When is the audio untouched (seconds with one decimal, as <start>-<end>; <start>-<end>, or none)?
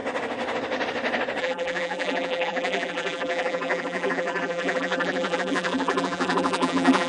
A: 0.0-1.4